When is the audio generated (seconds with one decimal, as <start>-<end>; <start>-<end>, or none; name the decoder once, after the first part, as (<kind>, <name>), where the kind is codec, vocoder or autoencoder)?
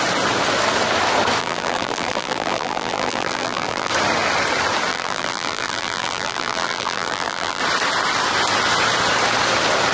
1.4-3.9 (vocoder, BigVGAN v2); 4.9-7.6